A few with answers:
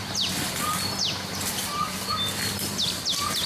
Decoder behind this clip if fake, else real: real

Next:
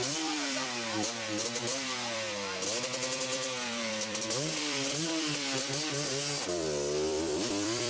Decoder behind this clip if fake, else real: fake, vocoder, BigVGAN v2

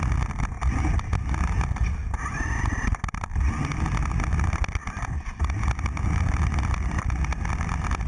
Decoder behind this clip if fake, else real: real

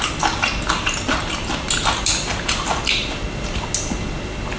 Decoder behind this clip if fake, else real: real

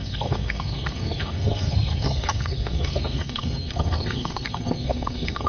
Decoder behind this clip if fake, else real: fake, codec, SNAC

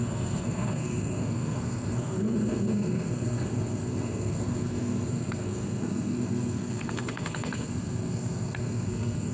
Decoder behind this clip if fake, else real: fake, codec, SNAC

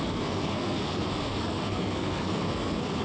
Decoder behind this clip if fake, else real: fake, codec, SNAC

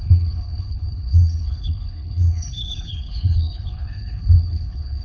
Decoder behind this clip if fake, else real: fake, codec, HILCodec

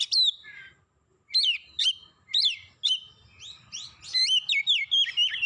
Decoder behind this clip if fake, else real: real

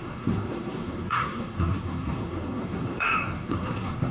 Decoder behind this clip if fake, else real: fake, codec, SNAC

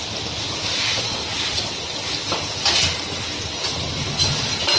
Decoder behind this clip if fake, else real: real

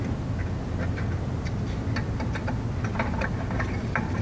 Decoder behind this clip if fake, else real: real